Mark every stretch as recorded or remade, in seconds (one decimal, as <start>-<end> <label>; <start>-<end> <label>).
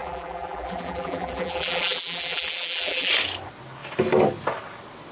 0.0-3.1 remade; 3.1-5.1 recorded